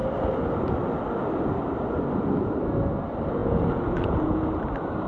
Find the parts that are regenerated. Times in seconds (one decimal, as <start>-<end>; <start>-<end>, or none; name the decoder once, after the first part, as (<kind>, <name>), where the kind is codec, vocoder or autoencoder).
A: 3.4-4.5 (vocoder, Vocos)